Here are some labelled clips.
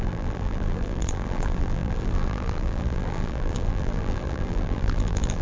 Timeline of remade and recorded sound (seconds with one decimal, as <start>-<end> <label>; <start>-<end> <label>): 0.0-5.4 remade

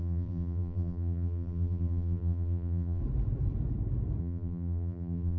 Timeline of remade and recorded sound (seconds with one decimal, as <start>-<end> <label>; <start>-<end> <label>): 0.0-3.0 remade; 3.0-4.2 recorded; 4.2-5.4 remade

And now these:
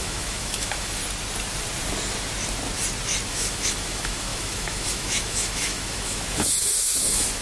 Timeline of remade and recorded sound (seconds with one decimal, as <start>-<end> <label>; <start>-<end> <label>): 0.0-1.0 remade; 1.0-3.3 recorded; 3.3-7.4 remade

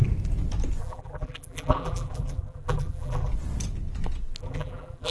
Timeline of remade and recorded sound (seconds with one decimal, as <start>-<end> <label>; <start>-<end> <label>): 0.0-0.8 recorded; 0.8-3.3 remade; 3.3-4.4 recorded; 4.4-5.1 remade